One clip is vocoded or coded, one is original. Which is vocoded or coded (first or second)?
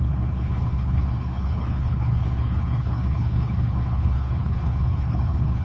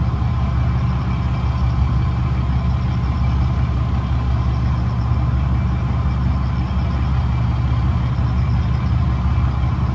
first